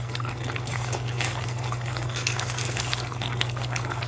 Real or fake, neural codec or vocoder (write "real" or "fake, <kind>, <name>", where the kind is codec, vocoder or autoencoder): fake, codec, SNAC